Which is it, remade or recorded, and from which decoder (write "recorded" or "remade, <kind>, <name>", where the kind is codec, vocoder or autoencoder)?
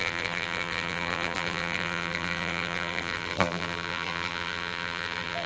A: remade, vocoder, BigVGAN v2